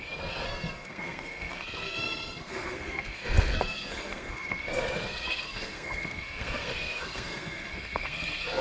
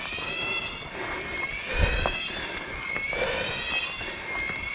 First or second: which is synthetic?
first